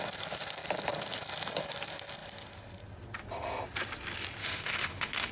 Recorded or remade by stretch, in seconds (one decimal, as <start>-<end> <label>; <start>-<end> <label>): 0.0-4.4 recorded; 4.4-5.3 remade